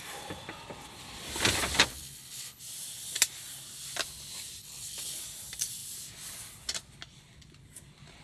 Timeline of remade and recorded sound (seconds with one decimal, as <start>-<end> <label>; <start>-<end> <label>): 0.0-1.9 recorded; 1.9-2.6 remade; 2.6-4.6 recorded; 4.6-5.2 remade; 5.2-8.2 recorded